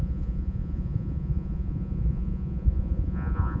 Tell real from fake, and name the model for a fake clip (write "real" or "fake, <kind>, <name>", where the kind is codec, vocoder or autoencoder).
fake, vocoder, Vocos